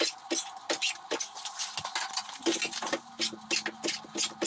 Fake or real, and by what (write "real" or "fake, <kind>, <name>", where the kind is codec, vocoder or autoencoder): real